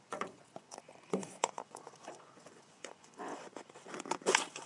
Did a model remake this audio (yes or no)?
yes